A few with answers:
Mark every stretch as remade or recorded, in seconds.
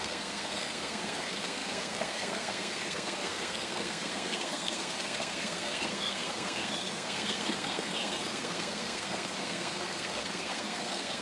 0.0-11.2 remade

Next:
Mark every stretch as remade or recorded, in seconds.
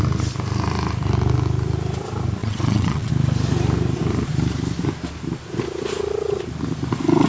0.0-2.4 recorded; 2.4-3.1 remade; 3.1-7.3 recorded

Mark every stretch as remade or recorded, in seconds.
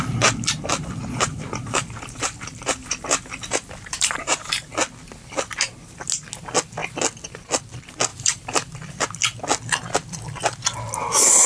0.0-1.3 recorded; 1.3-4.7 remade; 4.7-8.1 recorded; 8.1-9.0 remade; 9.0-11.5 recorded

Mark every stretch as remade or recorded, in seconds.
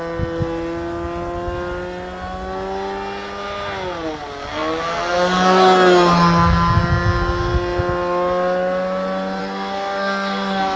0.0-9.4 recorded; 9.4-10.8 remade